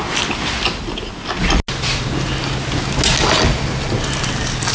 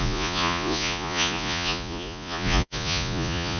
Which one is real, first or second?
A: first